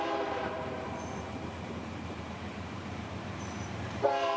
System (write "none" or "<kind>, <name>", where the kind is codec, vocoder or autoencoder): vocoder, BigVGAN v2